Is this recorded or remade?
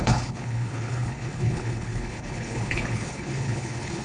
remade